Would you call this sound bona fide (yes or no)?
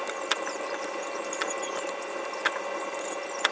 yes